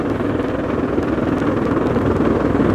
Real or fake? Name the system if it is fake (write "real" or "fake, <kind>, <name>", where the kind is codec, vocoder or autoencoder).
real